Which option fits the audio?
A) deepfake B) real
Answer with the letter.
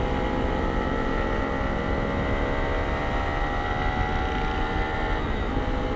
B